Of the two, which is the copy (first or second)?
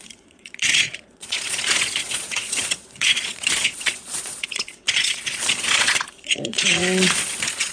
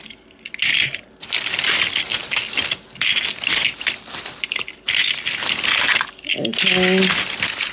first